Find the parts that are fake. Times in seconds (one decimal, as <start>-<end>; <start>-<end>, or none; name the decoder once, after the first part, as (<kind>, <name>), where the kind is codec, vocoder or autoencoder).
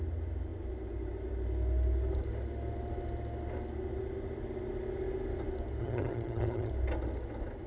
5.8-6.7 (vocoder, HiFi-GAN)